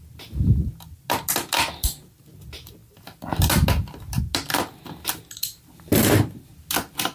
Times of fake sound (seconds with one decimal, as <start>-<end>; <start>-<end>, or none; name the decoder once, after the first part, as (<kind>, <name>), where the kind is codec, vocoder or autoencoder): none